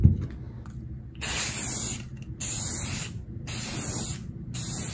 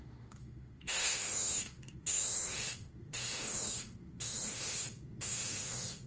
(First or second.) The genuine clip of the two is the first